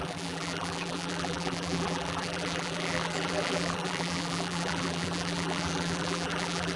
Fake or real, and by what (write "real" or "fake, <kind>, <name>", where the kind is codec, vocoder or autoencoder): fake, vocoder, BigVGAN v2